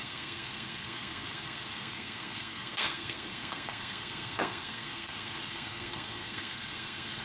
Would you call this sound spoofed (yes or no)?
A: yes